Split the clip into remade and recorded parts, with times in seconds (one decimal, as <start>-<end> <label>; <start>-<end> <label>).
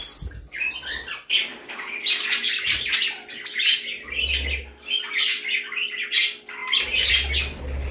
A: 0.0-1.5 recorded; 1.5-2.5 remade; 2.5-6.6 recorded; 6.6-7.1 remade; 7.1-7.9 recorded